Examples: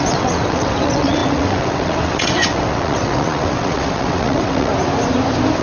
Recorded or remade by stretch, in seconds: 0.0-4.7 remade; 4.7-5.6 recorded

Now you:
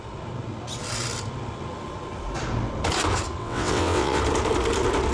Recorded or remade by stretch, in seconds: 0.0-3.4 recorded; 3.4-4.2 remade; 4.2-5.1 recorded

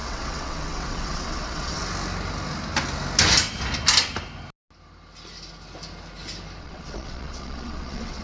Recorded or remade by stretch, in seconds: 0.0-1.8 remade; 1.8-6.6 recorded; 6.6-8.2 remade

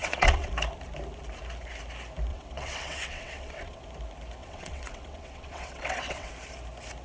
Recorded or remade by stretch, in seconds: 0.0-0.5 remade; 0.5-2.3 recorded; 2.3-3.9 remade; 3.9-4.4 recorded; 4.4-6.3 remade; 6.3-7.0 recorded

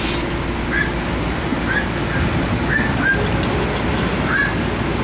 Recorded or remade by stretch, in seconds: 0.0-5.0 recorded

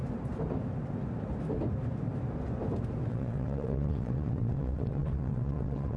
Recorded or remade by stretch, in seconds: 0.0-3.1 recorded; 3.1-6.0 remade